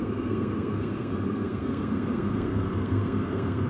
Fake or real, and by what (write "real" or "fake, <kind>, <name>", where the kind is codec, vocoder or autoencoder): fake, codec, SNAC